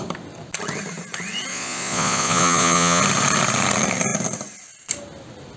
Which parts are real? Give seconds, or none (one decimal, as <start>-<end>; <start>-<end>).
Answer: 0.0-1.5; 3.0-5.6